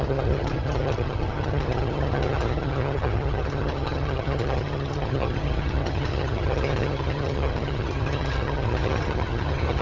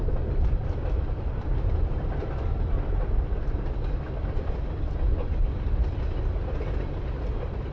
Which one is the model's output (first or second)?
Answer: first